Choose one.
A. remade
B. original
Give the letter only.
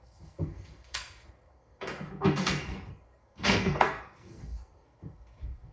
A